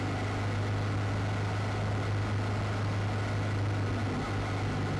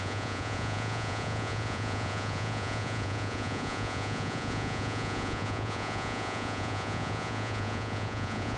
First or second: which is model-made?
second